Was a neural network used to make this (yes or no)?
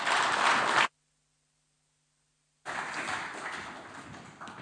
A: no